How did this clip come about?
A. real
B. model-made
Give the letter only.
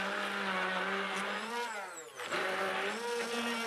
A